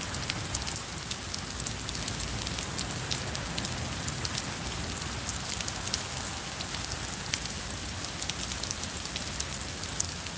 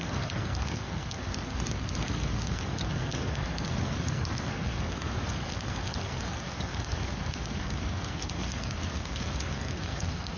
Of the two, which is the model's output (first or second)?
second